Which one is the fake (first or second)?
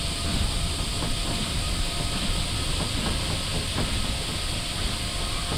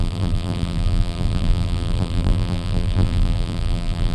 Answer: second